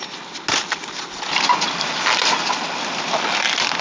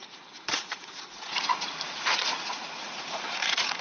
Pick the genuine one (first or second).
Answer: first